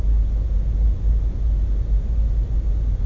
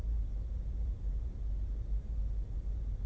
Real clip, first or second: first